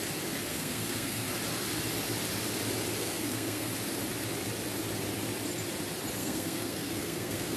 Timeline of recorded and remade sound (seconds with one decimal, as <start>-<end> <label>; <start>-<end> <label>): 0.0-0.5 recorded; 0.5-1.3 remade; 1.3-3.0 recorded; 3.0-3.7 remade; 3.7-6.2 recorded; 6.2-7.6 remade